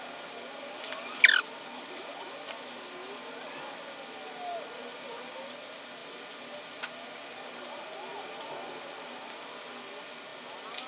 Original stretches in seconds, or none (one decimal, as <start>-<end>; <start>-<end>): 0.0-10.9